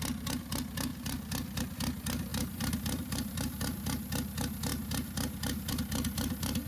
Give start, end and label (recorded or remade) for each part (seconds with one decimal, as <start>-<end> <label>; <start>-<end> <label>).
0.0-0.9 recorded; 0.9-1.6 remade; 1.6-2.3 recorded; 2.3-3.6 remade; 3.6-6.7 recorded